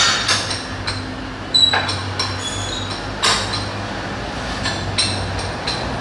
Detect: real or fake real